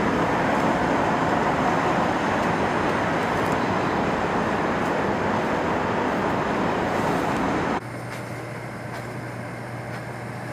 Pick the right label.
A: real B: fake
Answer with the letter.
A